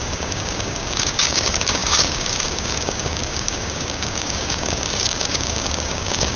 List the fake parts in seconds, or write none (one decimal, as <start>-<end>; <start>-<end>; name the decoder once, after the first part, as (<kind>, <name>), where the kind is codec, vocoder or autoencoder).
0.0-6.4 (codec, DAC)